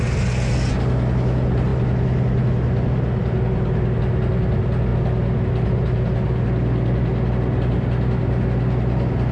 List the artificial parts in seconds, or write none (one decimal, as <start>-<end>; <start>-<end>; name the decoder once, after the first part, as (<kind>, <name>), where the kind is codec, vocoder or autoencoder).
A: none